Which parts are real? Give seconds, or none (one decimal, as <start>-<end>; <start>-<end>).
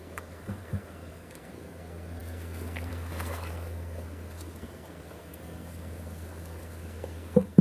none